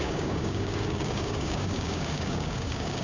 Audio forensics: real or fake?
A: fake